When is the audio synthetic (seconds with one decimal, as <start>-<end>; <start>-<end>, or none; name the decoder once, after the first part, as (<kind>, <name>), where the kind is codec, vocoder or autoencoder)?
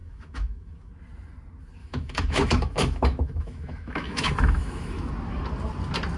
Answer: 0.0-0.9 (autoencoder, DAC-VAE); 1.8-5.1